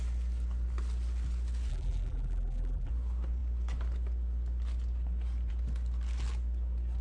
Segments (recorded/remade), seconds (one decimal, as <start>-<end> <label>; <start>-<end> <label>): 0.0-1.7 recorded; 1.7-2.9 remade; 2.9-7.0 recorded